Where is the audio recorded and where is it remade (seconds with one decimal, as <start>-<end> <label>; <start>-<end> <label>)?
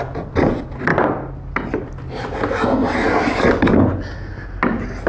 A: 0.0-5.1 recorded